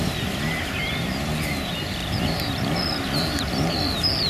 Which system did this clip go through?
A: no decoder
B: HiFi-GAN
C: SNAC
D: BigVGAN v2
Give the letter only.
D